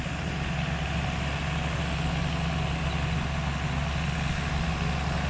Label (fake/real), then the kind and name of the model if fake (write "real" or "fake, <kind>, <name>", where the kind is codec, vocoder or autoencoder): real